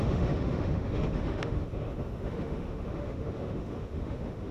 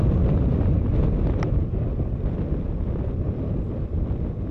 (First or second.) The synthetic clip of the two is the first